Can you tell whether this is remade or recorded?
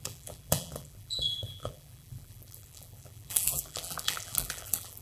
remade